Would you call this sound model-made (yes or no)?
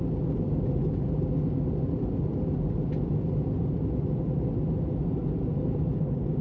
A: no